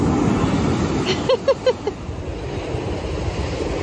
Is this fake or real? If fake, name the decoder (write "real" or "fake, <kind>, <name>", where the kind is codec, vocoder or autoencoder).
real